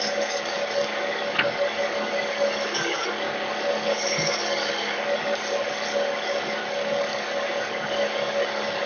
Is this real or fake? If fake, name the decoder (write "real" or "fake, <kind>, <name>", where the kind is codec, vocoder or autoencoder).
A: fake, codec, DAC